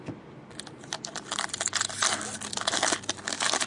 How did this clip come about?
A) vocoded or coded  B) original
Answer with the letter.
B